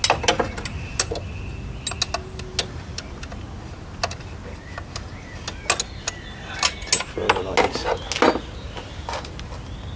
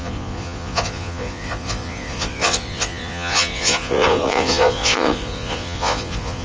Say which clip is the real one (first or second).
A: first